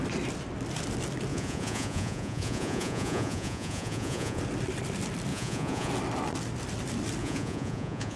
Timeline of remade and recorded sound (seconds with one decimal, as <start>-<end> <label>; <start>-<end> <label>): 0.0-1.3 recorded; 1.3-4.4 remade; 4.4-5.3 recorded; 5.3-5.9 remade; 5.9-7.2 recorded; 7.2-8.2 remade